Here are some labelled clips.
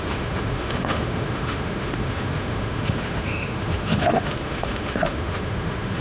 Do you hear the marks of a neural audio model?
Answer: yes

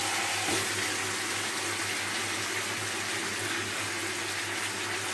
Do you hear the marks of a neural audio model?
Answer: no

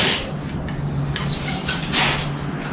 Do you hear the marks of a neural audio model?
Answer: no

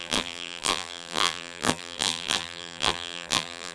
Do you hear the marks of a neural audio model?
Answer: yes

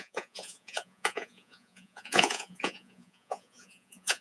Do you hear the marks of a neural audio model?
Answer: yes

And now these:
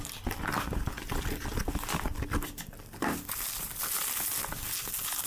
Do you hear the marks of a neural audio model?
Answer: no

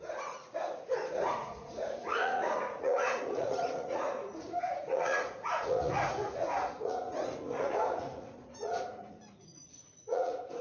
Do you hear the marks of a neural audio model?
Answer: yes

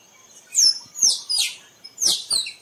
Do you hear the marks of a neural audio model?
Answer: yes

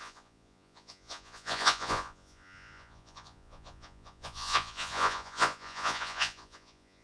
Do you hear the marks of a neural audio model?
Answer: yes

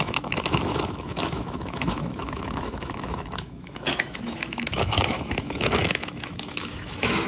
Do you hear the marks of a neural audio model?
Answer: yes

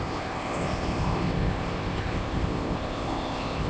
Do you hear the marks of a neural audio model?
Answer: yes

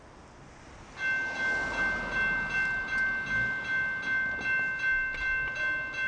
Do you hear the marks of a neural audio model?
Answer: no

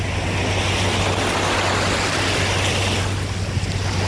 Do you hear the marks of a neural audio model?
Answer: no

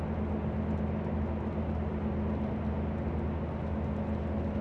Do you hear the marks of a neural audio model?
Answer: no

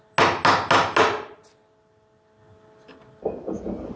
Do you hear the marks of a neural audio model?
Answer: no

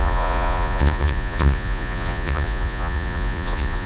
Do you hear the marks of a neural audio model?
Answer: yes